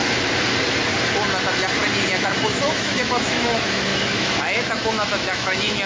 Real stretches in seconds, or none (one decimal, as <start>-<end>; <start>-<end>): 0.0-2.2